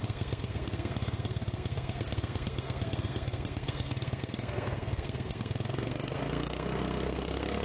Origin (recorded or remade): remade